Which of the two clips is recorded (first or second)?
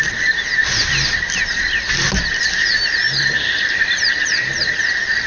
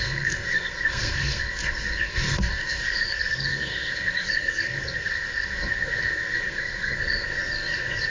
first